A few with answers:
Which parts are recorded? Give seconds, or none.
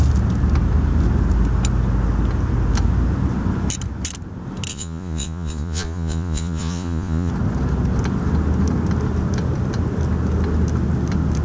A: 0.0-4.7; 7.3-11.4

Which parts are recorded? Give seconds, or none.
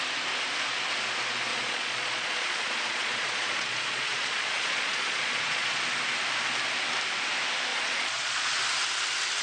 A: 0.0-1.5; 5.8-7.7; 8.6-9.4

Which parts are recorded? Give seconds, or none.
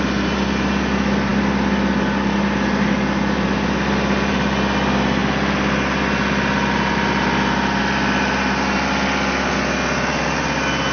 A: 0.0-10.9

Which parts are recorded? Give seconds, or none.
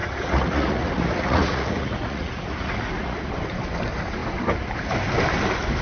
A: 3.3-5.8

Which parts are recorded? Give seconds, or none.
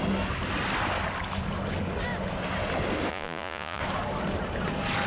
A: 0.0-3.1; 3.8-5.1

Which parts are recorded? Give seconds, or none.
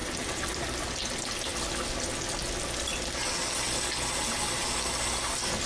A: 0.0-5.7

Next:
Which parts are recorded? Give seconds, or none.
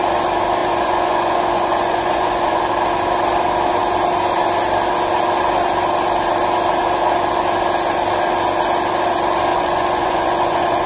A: 0.0-0.6; 2.6-9.5